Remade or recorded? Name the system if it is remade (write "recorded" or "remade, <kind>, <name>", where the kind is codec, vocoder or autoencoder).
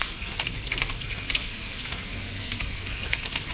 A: remade, codec, SNAC